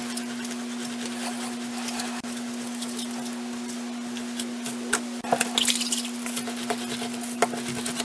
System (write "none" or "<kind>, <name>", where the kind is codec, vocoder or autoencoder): none